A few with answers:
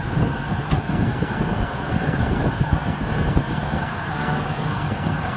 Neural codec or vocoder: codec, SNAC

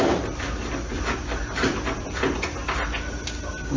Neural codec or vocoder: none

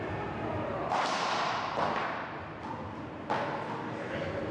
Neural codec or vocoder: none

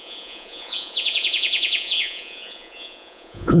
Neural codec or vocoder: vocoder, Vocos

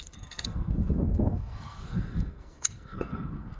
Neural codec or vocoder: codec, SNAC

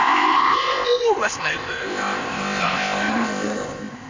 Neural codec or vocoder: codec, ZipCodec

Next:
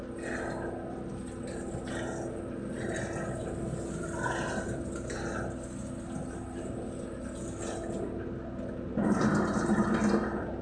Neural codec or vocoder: none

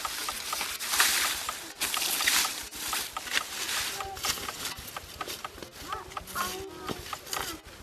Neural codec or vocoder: none